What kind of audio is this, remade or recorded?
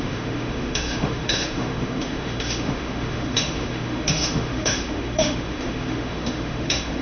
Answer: remade